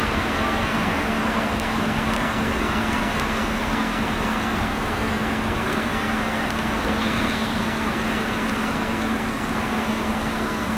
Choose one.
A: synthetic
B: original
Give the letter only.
A